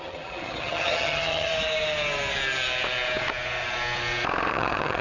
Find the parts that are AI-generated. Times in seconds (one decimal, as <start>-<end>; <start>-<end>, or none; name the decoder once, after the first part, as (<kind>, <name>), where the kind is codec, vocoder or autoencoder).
0.0-1.5 (vocoder, HiFi-GAN); 4.5-5.0